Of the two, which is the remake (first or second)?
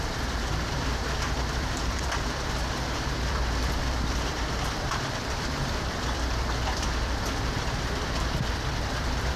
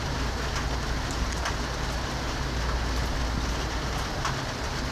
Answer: first